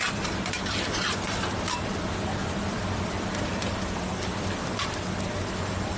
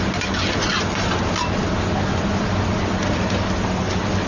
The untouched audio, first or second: second